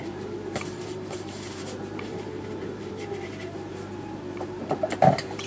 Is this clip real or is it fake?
fake